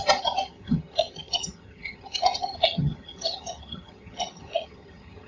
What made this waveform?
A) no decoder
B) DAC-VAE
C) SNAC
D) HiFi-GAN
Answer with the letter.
D